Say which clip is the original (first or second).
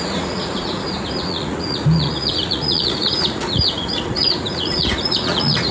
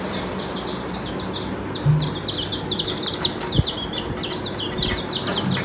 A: second